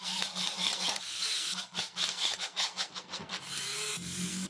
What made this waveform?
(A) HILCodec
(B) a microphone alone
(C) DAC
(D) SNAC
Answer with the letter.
D